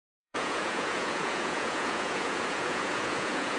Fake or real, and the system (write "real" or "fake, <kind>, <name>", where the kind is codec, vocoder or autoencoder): fake, vocoder, Vocos